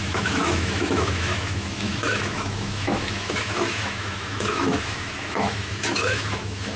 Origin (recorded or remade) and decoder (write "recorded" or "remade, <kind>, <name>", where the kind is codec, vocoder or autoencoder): remade, autoencoder, DAC-VAE